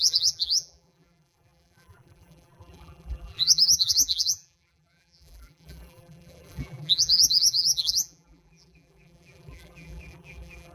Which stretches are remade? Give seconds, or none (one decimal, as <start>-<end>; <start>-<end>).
0.0-10.7